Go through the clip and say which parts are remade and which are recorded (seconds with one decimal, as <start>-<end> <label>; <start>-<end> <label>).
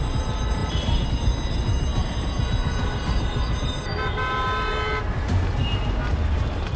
0.0-0.6 recorded; 0.6-1.1 remade; 1.1-6.8 recorded